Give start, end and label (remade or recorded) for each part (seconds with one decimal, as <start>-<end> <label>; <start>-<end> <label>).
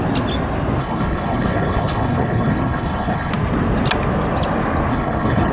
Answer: 0.0-0.8 recorded; 0.8-3.3 remade; 3.3-4.9 recorded; 4.9-5.5 remade